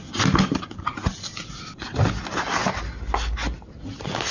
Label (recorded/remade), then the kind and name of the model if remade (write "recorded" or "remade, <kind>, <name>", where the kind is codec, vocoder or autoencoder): recorded